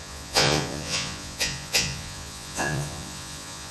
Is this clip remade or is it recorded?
remade